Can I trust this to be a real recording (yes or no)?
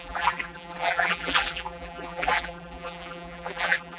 no